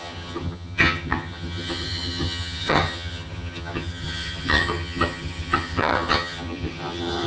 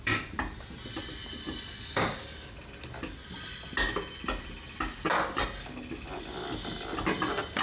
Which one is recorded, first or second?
second